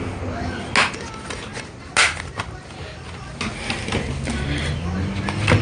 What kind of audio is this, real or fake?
real